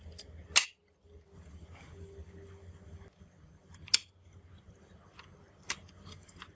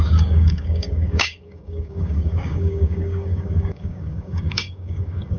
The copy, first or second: second